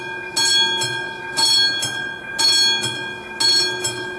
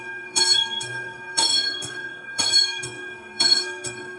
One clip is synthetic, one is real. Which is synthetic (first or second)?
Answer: second